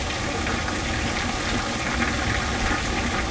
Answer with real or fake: real